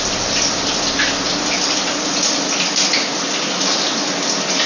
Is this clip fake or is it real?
real